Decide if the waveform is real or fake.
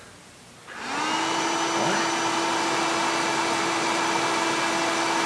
real